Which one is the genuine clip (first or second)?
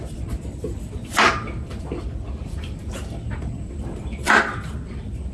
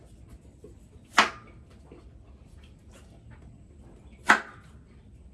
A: second